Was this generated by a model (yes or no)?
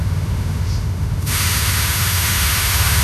yes